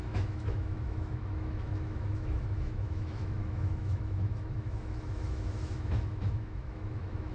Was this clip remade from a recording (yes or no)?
yes